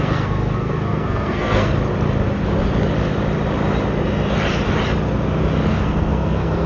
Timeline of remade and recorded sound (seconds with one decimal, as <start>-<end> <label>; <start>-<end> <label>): 0.0-1.7 remade; 1.7-5.7 recorded; 5.7-6.7 remade